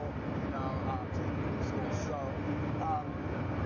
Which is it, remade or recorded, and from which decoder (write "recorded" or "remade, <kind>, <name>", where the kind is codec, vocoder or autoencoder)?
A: recorded